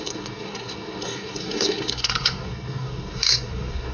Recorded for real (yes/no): no